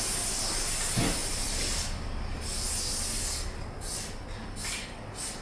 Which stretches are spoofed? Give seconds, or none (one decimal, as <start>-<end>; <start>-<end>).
1.2-2.4